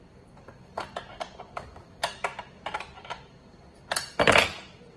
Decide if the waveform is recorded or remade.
remade